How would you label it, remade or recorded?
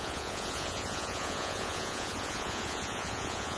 remade